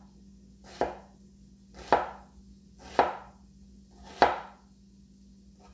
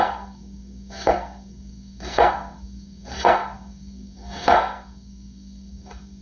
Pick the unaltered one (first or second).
first